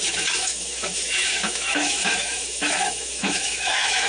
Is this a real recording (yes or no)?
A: no